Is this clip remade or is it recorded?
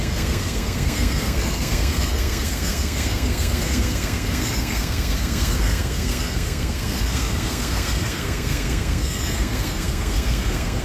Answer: remade